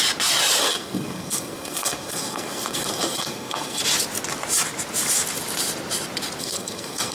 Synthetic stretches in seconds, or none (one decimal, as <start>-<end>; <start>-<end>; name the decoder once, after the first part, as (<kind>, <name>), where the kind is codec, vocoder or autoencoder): 0.6-3.8 (codec, SNAC); 6.4-7.1